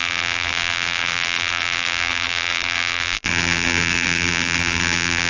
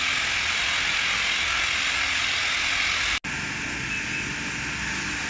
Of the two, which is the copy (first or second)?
first